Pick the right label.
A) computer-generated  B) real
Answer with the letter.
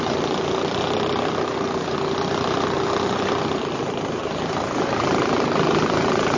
B